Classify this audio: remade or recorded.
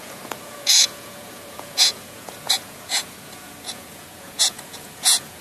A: remade